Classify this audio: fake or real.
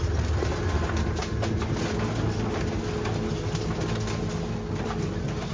real